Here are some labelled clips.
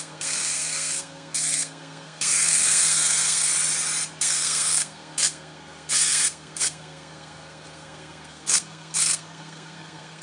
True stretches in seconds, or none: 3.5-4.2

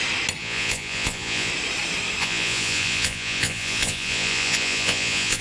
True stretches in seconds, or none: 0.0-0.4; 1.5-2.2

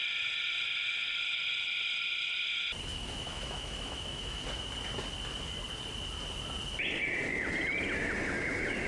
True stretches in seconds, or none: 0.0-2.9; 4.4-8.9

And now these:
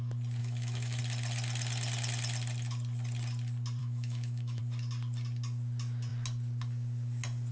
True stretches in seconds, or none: 0.0-0.4; 1.0-3.8; 4.6-7.5

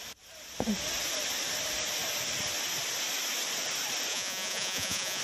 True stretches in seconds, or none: 0.0-4.1

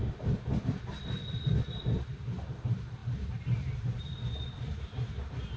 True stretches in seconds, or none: 0.0-5.6

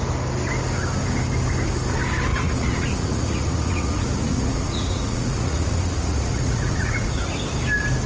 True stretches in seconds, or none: 0.0-2.3; 7.2-8.1